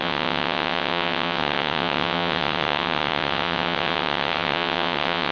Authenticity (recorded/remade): remade